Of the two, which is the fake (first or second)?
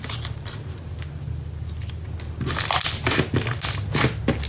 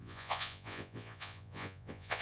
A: second